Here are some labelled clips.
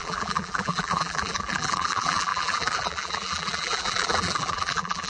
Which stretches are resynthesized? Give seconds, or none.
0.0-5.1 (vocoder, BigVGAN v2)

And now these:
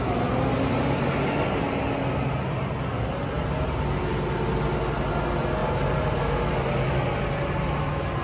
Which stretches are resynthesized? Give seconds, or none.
5.6-6.2 (vocoder, BigVGAN v2)

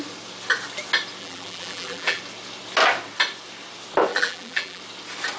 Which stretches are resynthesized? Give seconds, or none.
1.2-2.2 (vocoder, BigVGAN v2); 4.1-4.8